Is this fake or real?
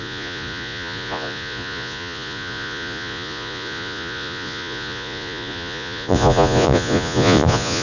fake